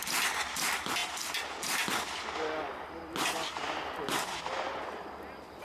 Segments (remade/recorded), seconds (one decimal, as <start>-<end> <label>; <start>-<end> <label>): 0.0-5.6 recorded